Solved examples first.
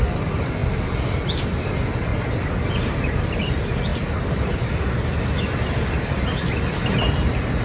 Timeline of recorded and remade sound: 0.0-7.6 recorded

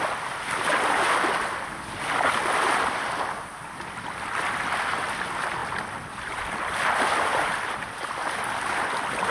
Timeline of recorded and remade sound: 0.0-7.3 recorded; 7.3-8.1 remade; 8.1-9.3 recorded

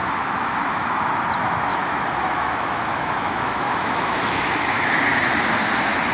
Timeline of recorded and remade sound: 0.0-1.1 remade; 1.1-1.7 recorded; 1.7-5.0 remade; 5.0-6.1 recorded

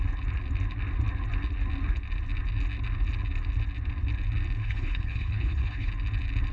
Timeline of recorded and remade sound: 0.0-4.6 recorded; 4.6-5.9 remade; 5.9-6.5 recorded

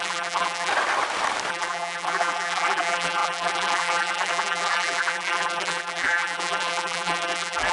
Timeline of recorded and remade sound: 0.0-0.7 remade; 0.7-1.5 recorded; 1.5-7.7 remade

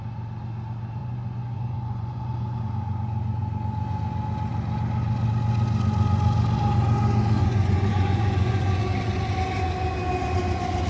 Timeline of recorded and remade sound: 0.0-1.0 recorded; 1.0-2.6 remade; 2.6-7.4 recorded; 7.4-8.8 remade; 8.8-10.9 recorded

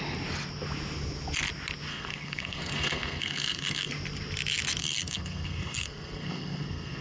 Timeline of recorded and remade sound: 0.0-1.9 recorded; 1.9-3.9 remade; 3.9-4.8 recorded; 4.8-7.0 remade

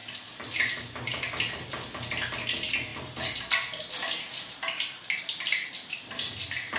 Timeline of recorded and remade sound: 0.0-6.8 recorded